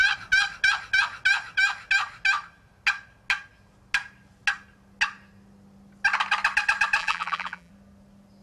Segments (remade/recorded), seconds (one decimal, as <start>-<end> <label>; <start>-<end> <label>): 0.0-7.0 recorded; 7.0-7.7 remade; 7.7-8.4 recorded